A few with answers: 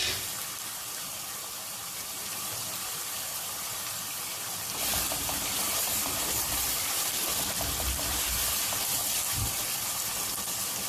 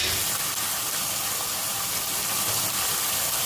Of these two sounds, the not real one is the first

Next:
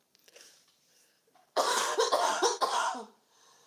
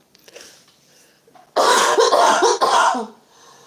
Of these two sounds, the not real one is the first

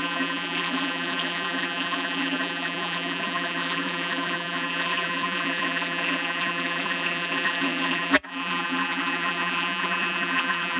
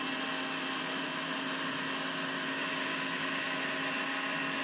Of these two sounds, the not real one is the first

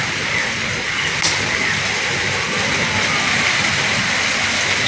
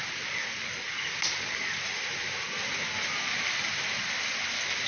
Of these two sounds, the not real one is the first